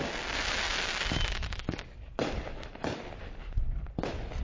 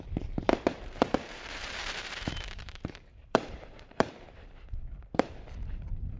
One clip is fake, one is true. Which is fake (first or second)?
second